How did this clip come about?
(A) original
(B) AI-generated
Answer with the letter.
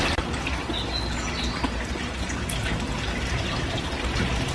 A